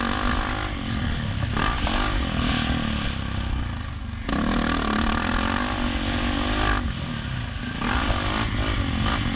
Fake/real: real